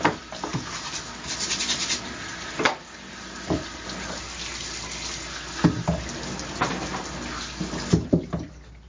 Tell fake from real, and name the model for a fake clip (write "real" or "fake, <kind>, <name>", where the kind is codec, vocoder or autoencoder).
real